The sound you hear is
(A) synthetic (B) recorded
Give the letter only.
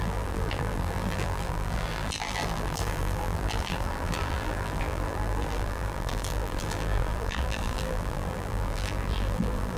A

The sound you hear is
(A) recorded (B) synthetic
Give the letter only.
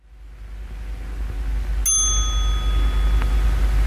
A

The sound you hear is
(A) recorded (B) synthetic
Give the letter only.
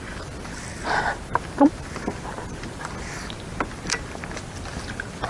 A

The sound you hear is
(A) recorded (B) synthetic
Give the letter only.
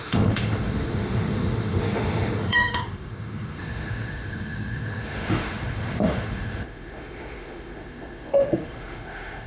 B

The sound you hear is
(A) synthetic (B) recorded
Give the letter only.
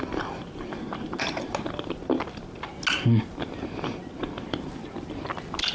B